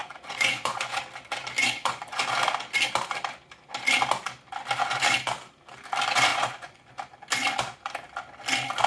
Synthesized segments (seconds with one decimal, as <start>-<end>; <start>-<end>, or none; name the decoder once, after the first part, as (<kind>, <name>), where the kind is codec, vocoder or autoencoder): 0.0-1.0 (vocoder, Vocos); 1.6-2.2; 6.3-6.9